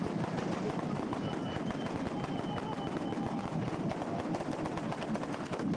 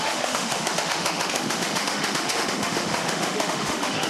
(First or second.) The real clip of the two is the first